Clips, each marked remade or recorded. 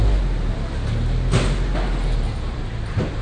recorded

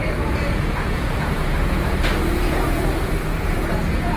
remade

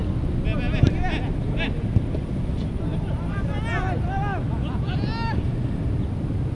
recorded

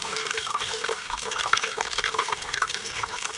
remade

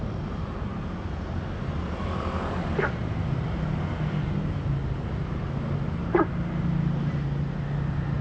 recorded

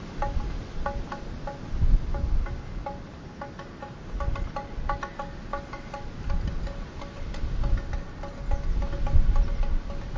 recorded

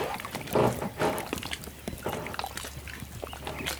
recorded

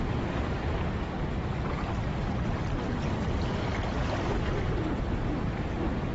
recorded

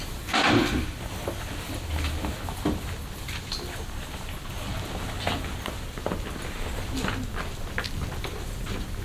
recorded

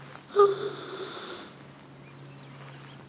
recorded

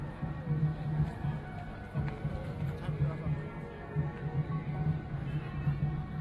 recorded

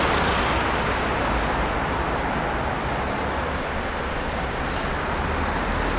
recorded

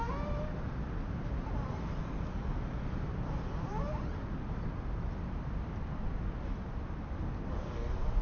recorded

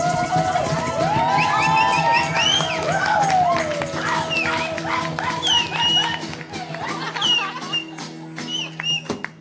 recorded